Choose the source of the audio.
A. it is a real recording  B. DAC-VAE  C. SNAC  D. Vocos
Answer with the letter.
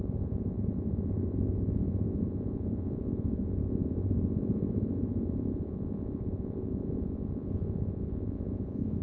D